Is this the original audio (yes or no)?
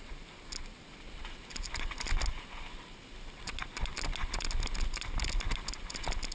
yes